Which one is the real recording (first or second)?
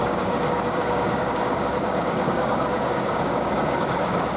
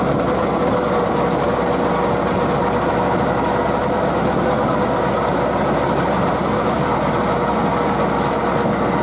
second